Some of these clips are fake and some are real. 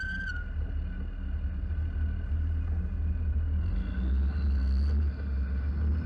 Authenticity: real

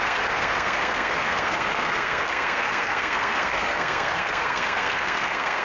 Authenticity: fake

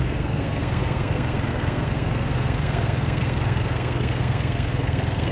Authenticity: fake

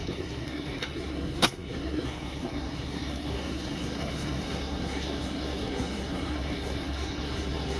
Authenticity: fake